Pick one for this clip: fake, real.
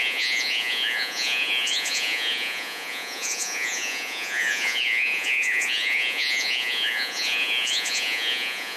fake